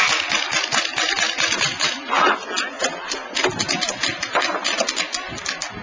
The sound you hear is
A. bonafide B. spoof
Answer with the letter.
A